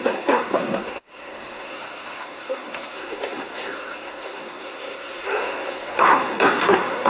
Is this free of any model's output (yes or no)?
no